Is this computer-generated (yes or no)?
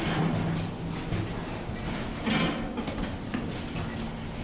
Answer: no